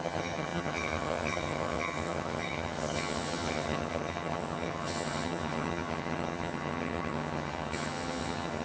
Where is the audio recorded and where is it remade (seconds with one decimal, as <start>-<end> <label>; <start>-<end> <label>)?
0.0-8.6 remade